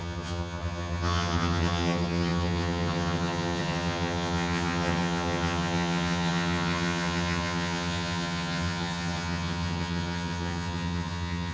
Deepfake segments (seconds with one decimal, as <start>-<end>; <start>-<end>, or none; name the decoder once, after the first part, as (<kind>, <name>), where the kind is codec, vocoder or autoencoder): 0.0-11.5 (vocoder, HiFi-GAN)